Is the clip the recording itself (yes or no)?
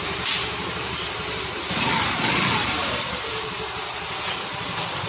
no